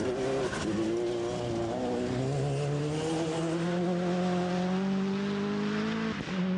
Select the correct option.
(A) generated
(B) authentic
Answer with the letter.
B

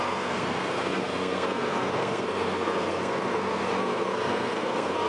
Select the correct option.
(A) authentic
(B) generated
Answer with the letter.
B